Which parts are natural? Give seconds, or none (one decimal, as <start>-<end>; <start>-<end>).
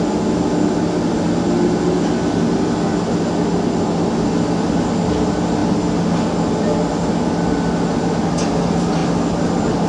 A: 0.0-9.9